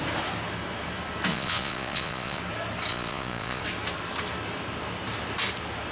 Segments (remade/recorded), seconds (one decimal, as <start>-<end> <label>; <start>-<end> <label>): 0.0-1.3 recorded; 1.3-2.4 remade; 2.4-2.9 recorded; 2.9-3.6 remade; 3.6-5.9 recorded